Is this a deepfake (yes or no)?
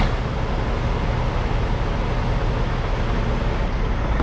no